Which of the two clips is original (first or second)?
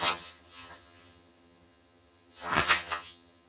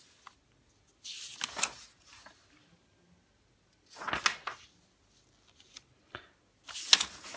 second